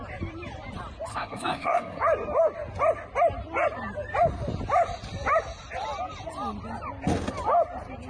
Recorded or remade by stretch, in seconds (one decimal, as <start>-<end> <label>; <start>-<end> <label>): 0.0-1.1 recorded; 1.1-2.0 remade; 2.0-8.1 recorded